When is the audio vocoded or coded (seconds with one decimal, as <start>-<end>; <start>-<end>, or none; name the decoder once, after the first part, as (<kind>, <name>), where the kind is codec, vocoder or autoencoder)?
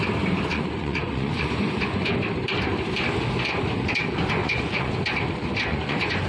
0.5-2.1 (vocoder, Vocos); 4.4-4.9; 5.7-6.3